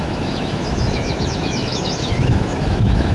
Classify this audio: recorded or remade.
remade